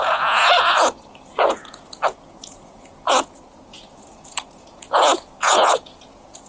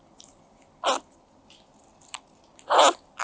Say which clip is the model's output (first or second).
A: first